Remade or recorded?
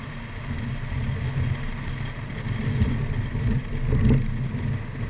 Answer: recorded